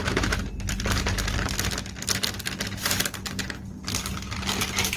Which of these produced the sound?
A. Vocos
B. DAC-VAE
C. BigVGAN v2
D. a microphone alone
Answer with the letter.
D